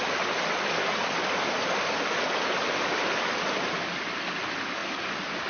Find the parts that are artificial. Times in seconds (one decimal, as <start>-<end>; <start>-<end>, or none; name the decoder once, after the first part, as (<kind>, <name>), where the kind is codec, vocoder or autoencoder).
none